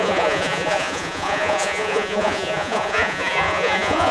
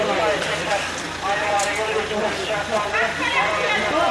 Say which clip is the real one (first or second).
second